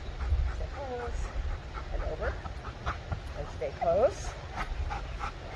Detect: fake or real real